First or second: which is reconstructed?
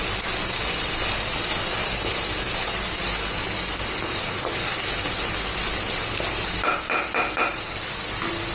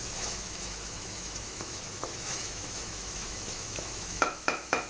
second